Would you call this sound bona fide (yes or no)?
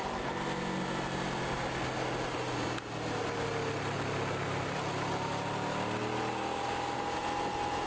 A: yes